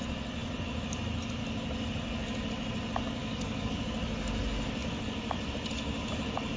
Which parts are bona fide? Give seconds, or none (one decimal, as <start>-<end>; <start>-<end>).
0.0-3.2; 3.8-6.6